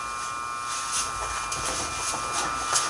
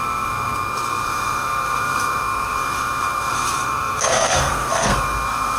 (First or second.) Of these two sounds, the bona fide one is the first